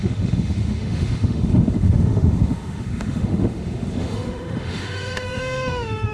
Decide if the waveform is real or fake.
fake